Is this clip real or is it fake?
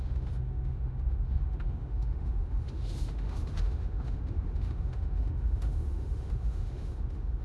fake